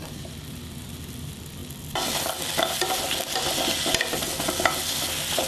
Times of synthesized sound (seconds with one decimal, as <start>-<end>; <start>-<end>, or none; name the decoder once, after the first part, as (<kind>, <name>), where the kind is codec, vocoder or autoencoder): none